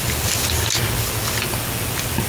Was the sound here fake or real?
real